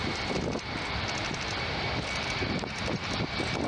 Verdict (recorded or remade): recorded